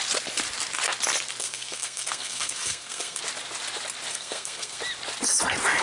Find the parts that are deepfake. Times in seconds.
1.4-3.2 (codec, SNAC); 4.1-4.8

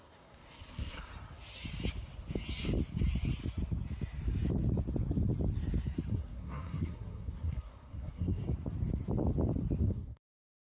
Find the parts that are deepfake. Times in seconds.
0.0-1.1 (codec, SNAC); 6.1-8.4; 9.8-10.6

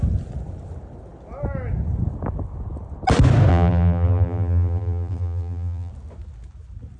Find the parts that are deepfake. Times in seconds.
3.5-5.9 (vocoder, BigVGAN v2)

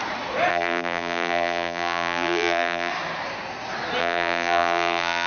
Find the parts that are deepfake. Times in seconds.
0.5-2.9 (vocoder, BigVGAN v2); 4.0-5.3

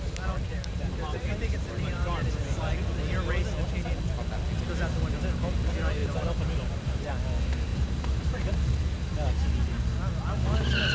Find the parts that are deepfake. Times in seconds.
0.5-2.7 (vocoder, BigVGAN v2); 6.0-7.1; 7.7-8.5

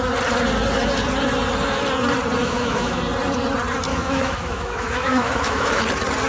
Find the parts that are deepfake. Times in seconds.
2.4-3.0 (autoencoder, DAC-VAE); 3.9-5.8

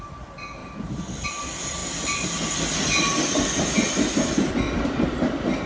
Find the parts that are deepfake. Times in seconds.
none

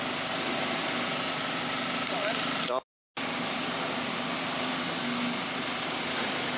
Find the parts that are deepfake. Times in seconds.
none